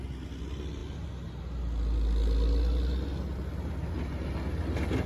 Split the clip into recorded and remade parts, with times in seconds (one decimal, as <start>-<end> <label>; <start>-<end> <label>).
0.0-5.1 recorded